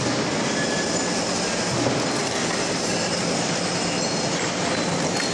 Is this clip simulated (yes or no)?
no